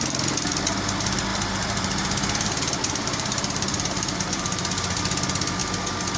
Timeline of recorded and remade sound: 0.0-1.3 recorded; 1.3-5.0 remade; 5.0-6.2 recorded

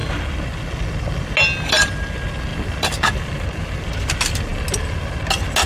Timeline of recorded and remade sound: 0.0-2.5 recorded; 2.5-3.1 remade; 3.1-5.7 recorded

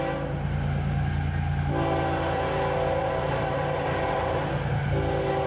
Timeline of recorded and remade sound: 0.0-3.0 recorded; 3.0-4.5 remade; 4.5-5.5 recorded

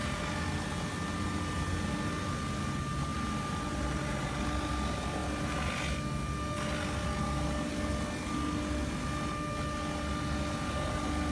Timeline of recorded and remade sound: 0.0-3.1 recorded; 3.1-4.7 remade; 4.7-11.3 recorded